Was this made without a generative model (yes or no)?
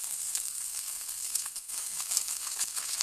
no